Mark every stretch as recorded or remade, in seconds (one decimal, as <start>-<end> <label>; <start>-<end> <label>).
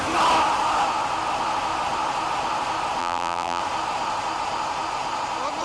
0.0-3.0 recorded; 3.0-3.6 remade; 3.6-5.6 recorded